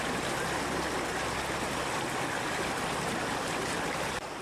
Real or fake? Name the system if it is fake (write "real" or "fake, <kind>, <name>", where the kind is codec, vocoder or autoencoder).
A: real